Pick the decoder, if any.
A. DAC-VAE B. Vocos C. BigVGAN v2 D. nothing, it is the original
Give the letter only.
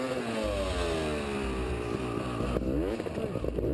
D